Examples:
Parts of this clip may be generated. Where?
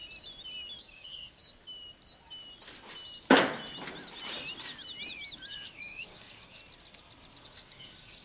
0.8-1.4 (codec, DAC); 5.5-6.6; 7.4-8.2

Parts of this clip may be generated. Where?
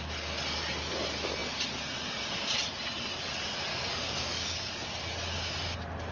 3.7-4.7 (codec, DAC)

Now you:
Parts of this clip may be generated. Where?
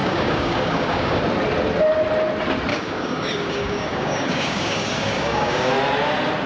0.0-1.2 (codec, DAC); 2.7-5.7